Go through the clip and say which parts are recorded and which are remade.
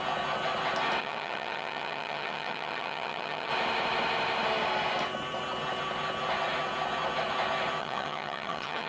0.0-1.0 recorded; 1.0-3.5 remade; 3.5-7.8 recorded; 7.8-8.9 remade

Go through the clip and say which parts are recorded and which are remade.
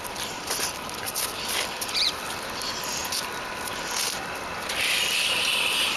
0.0-3.0 remade; 3.0-3.7 recorded; 3.7-6.0 remade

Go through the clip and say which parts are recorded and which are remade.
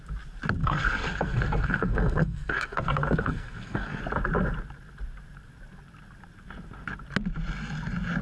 0.0-0.6 recorded; 0.6-4.0 remade; 4.0-8.2 recorded